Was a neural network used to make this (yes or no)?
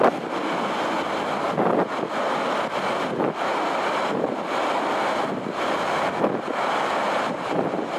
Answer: no